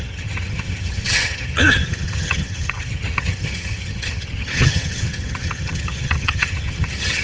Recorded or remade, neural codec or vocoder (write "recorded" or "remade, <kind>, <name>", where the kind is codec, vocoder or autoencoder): remade, vocoder, HiFi-GAN